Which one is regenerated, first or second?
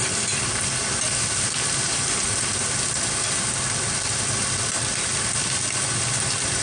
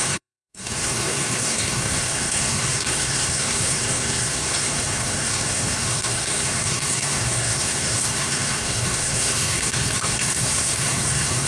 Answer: second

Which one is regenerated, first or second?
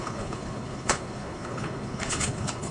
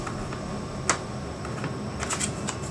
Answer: first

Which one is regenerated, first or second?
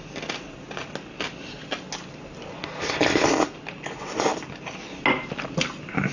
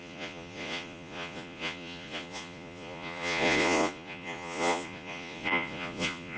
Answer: second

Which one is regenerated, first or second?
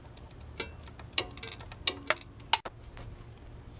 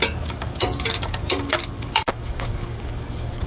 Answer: second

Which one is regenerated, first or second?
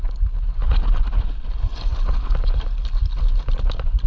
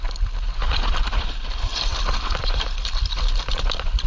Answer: second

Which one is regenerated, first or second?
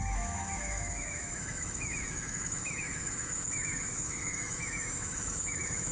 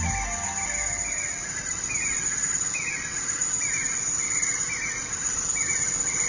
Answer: first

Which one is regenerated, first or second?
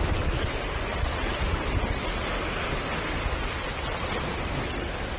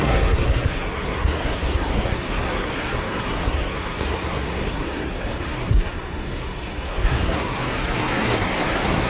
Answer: second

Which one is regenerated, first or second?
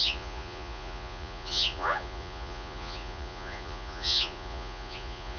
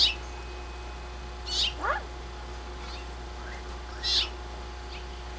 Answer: first